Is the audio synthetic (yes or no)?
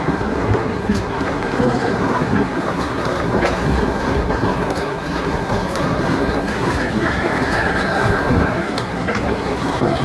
yes